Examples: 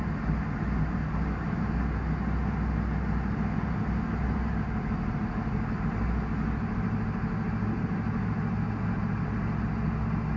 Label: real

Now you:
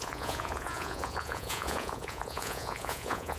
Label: fake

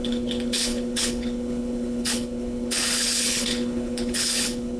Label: fake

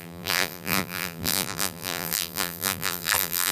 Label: fake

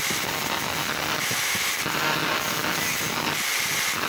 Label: real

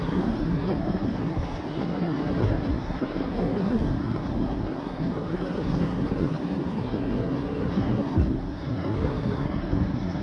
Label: fake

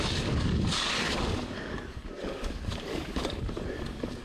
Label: fake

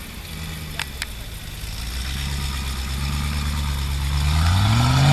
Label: real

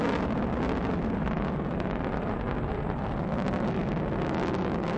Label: real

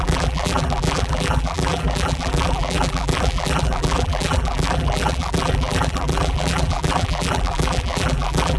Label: fake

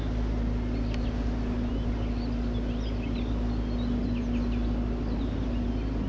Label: real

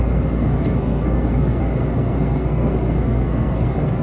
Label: fake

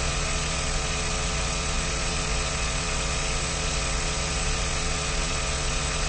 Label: fake